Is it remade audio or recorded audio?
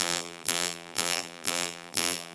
remade